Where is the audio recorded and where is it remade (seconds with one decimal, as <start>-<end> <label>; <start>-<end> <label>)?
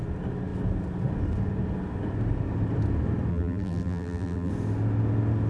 0.0-3.3 recorded; 3.3-4.5 remade; 4.5-5.5 recorded